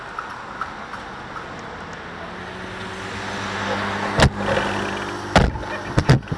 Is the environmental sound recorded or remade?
recorded